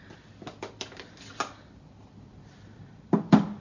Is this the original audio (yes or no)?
yes